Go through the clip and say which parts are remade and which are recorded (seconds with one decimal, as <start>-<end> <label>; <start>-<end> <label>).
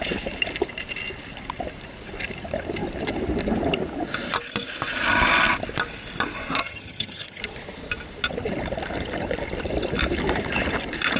0.0-6.6 recorded; 6.6-7.4 remade; 7.4-11.2 recorded